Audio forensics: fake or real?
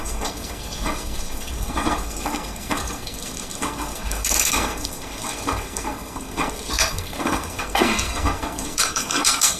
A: fake